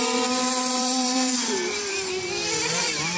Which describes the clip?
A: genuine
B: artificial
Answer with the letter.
B